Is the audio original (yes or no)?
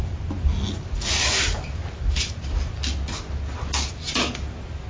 yes